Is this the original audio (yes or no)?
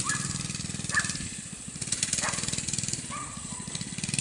yes